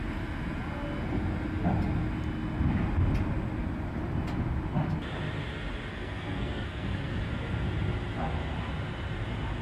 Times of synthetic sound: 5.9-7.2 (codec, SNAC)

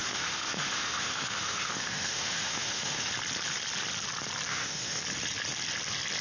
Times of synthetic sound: 0.0-3.1 (autoencoder, DAC-VAE); 4.5-5.0

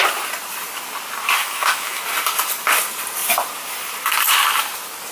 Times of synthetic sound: 1.4-2.0 (autoencoder, DAC-VAE)

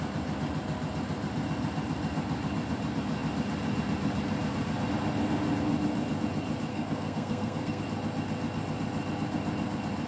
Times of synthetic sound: 6.7-7.8 (codec, SNAC)

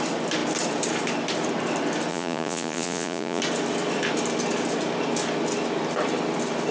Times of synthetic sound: 2.1-3.4 (vocoder, Vocos)

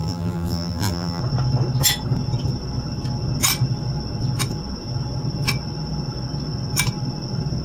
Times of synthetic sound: 0.0-1.2 (vocoder, BigVGAN v2)

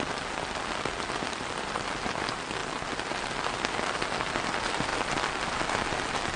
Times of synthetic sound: none